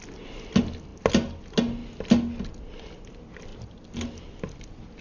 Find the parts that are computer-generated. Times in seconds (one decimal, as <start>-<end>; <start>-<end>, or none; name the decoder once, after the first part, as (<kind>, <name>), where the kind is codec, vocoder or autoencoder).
none